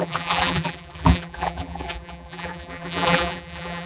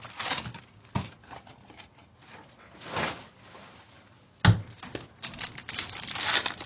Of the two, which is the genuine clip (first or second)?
second